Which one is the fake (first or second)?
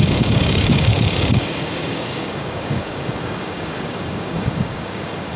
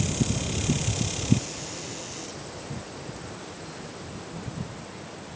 first